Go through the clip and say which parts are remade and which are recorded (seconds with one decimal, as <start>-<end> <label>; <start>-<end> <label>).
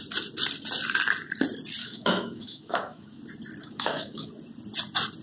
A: 0.0-1.8 recorded; 1.8-3.2 remade; 3.2-3.6 recorded; 3.6-4.3 remade; 4.3-5.2 recorded